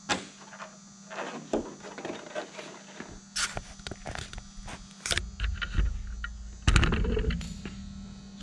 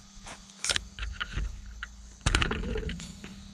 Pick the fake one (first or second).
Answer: second